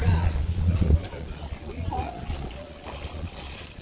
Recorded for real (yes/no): no